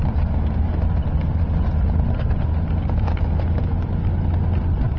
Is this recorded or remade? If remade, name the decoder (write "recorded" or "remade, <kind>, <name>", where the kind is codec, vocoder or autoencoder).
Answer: recorded